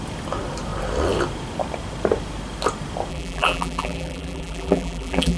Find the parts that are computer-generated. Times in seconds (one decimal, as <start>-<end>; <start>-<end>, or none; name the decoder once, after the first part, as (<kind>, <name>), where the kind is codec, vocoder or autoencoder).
3.1-5.4 (vocoder, BigVGAN v2)